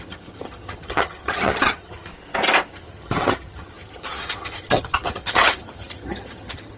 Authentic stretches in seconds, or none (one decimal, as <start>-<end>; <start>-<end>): 2.1-2.7